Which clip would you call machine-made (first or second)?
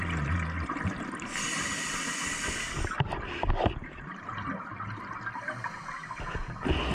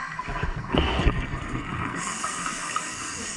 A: second